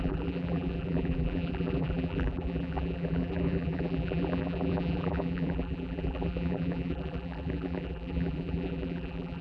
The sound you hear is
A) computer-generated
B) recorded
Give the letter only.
A